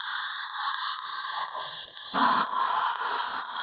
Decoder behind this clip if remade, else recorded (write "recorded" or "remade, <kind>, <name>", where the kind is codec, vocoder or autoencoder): recorded